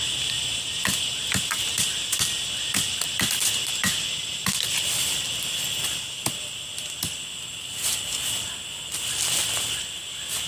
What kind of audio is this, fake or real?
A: real